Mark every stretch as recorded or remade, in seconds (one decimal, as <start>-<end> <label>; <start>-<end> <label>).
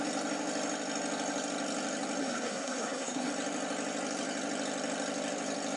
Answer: 0.0-2.2 recorded; 2.2-3.3 remade; 3.3-5.8 recorded